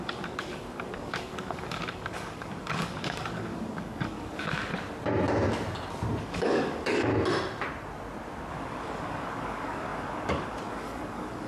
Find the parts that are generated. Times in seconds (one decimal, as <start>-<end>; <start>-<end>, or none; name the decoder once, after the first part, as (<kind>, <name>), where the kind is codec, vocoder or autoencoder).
0.0-4.7 (codec, DAC); 6.2-7.1; 8.5-11.5

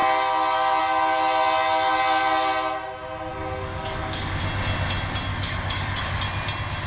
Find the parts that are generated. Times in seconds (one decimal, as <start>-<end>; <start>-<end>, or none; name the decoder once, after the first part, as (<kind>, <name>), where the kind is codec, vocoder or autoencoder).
3.3-4.4 (codec, DAC); 5.3-6.2

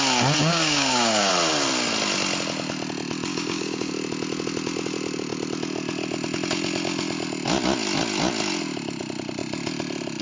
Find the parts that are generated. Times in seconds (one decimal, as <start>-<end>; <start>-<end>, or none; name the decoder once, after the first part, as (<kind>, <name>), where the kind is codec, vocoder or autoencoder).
0.4-1.3 (codec, DAC); 3.3-3.9

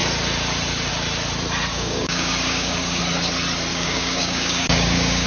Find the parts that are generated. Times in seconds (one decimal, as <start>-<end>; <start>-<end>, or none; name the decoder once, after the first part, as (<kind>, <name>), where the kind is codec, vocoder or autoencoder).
1.7-3.0 (codec, DAC); 3.7-5.3

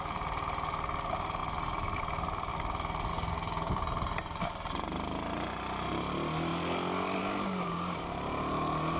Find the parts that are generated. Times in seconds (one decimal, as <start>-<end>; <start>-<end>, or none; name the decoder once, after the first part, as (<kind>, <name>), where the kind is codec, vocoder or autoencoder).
3.1-3.8 (codec, DAC)